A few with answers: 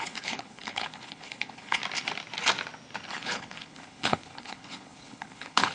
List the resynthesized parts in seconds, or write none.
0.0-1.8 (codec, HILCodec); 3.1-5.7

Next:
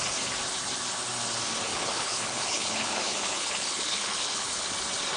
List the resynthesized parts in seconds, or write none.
1.7-4.7 (codec, HILCodec)

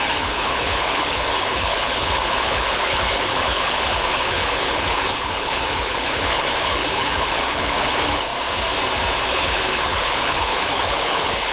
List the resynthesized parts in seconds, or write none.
0.0-8.3 (codec, HILCodec); 9.3-11.5

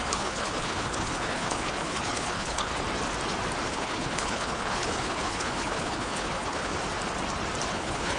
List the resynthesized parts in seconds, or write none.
0.0-2.7 (codec, HILCodec); 3.7-6.7; 7.7-8.2

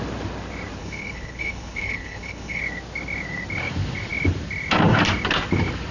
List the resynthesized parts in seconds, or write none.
0.8-2.6 (codec, HILCodec)

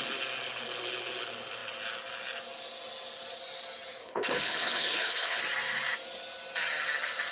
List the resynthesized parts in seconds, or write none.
4.0-5.4 (codec, HILCodec)

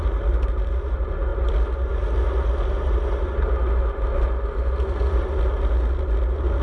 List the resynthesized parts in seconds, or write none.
none